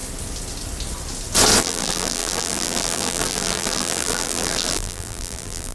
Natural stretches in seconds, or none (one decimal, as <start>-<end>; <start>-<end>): 0.0-1.6